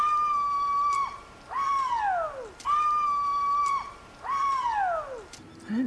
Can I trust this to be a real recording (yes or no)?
yes